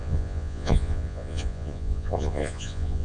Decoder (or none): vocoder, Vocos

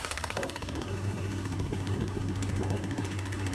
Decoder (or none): codec, SNAC